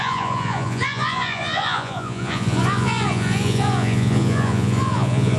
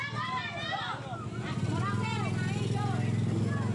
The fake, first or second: first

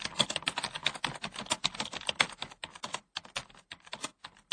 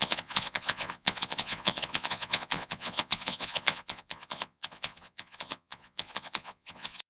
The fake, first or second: second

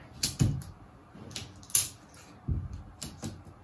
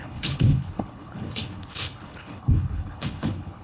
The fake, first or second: second